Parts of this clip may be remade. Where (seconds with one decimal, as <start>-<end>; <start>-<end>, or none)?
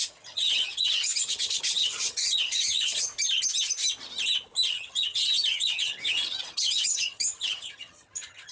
0.0-3.1; 4.7-8.5